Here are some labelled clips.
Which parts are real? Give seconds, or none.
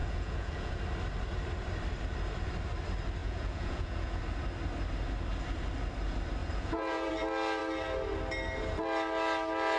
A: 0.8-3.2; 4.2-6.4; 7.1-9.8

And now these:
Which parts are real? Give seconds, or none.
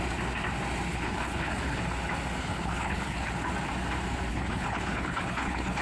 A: 0.0-0.9; 1.8-2.4; 3.3-4.3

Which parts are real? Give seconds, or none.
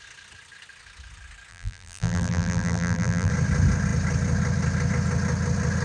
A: 0.0-1.5; 3.3-5.8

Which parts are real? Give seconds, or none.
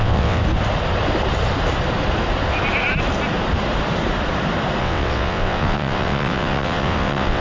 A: 0.4-4.8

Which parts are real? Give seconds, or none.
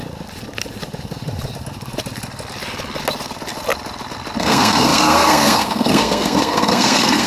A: 0.0-4.4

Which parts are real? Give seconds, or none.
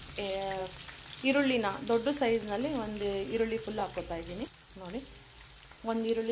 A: 0.0-6.3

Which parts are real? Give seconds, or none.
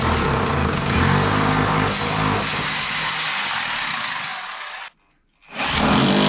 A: 0.0-0.6; 1.5-6.3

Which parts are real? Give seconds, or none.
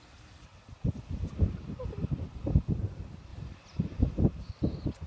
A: 0.0-5.1